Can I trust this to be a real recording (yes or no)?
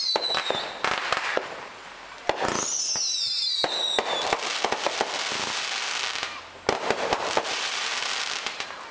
yes